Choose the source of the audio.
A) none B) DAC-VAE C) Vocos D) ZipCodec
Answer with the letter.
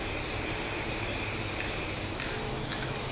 A